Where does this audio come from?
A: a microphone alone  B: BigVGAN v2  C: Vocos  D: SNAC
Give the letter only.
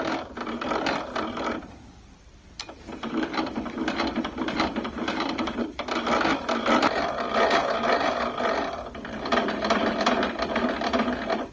B